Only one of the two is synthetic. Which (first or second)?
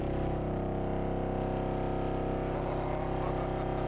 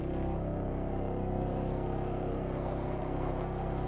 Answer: second